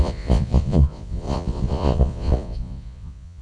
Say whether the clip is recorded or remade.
remade